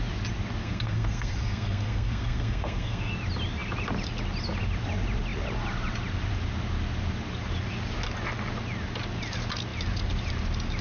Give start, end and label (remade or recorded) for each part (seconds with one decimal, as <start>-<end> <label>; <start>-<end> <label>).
0.0-0.6 recorded; 0.6-3.1 remade; 3.1-10.8 recorded